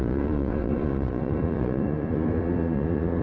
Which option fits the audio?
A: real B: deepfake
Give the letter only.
B